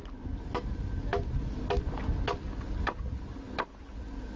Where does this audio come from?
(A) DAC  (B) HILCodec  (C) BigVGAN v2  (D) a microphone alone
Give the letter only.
D